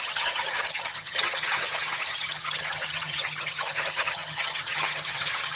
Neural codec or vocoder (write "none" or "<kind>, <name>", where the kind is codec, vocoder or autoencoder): vocoder, HiFi-GAN